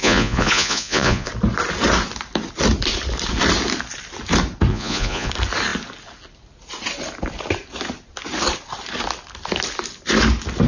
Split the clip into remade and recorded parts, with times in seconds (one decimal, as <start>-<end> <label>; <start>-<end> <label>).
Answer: 0.0-1.3 remade; 1.3-4.7 recorded; 4.7-5.3 remade; 5.3-10.7 recorded